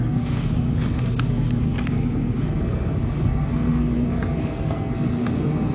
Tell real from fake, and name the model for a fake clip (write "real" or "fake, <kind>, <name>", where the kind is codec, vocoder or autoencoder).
fake, codec, SNAC